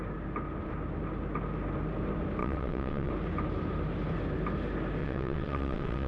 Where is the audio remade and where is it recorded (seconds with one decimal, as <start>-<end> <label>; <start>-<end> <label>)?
0.0-2.4 recorded; 2.4-3.1 remade; 3.1-5.0 recorded; 5.0-6.1 remade